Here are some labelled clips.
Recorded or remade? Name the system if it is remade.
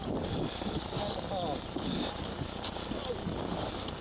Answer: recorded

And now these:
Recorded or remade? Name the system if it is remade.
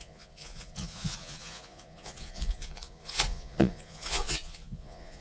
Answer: remade, vocoder, Vocos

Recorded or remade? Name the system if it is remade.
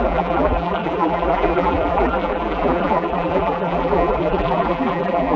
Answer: remade, vocoder, BigVGAN v2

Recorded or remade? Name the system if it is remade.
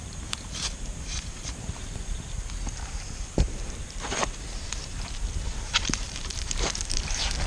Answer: remade, vocoder, BigVGAN v2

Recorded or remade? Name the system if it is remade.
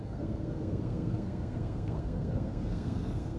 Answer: remade, codec, SNAC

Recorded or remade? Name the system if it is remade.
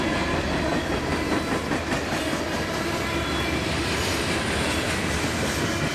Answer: recorded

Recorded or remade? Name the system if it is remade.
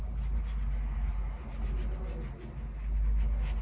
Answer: recorded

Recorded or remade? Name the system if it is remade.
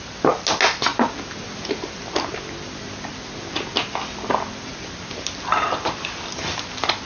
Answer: recorded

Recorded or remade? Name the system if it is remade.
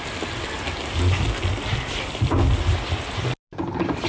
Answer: recorded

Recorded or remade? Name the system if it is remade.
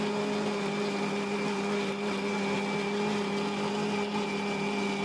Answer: recorded